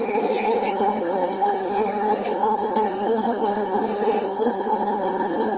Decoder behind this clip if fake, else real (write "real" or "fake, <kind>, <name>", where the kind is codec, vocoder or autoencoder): fake, codec, SNAC